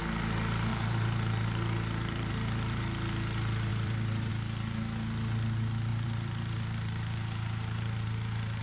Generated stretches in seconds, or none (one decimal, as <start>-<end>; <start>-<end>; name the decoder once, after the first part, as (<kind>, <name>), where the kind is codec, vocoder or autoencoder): 0.7-2.3 (vocoder, BigVGAN v2); 3.7-4.3; 5.9-8.6